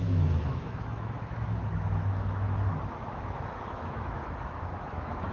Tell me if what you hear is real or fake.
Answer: fake